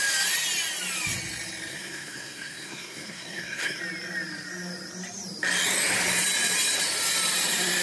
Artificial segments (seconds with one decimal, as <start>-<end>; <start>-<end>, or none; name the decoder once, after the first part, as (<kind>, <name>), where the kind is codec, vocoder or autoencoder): 1.7-3.8 (codec, SNAC)